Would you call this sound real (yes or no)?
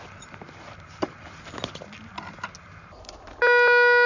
yes